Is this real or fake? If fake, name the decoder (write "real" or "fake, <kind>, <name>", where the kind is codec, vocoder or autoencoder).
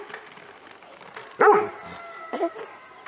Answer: real